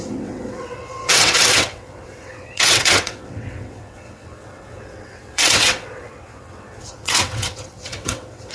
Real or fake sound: fake